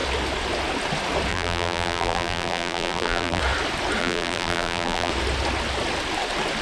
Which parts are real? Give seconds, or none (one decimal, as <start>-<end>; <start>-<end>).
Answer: 0.0-1.3; 3.4-4.0; 5.1-6.6